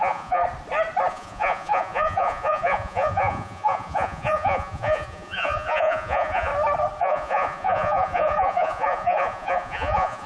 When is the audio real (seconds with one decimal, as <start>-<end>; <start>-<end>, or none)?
0.4-1.1; 6.5-7.0

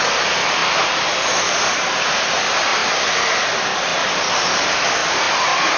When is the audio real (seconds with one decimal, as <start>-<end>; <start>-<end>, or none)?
0.0-0.6; 1.5-3.9; 4.9-5.8

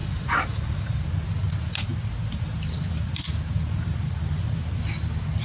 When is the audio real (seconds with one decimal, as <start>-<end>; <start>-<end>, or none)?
1.0-5.4

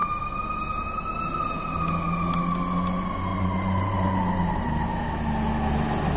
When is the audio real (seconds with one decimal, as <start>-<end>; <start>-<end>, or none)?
0.0-3.3; 4.7-6.2

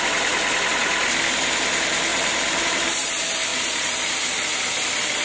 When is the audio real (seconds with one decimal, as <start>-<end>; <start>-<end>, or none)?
0.0-2.1; 3.0-3.5; 4.1-5.2

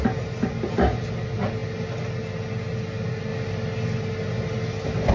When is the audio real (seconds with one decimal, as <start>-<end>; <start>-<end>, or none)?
0.0-5.1